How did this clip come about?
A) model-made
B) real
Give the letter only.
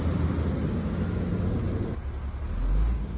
B